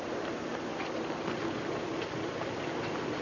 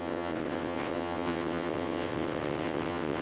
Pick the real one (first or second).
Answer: first